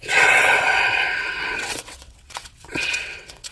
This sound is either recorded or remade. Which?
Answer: remade